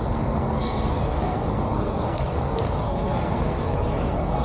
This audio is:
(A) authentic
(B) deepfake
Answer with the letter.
B